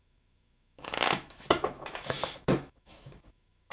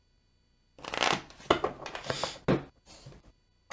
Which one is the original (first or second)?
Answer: second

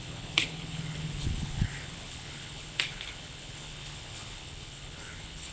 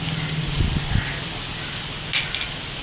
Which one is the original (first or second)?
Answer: second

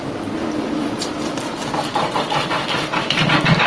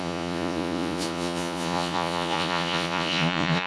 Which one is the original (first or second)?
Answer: first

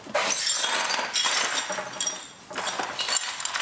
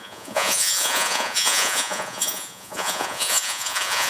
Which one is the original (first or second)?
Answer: first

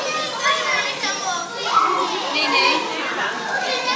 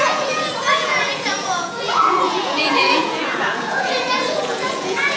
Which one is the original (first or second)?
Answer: first